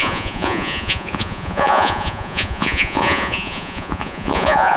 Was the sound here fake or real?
fake